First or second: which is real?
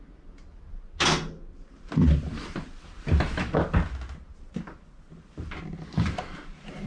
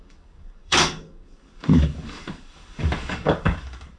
first